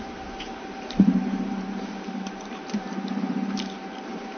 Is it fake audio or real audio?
fake